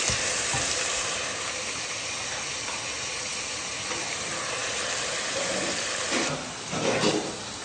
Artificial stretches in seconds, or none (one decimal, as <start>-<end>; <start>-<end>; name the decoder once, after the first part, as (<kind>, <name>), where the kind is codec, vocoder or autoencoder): none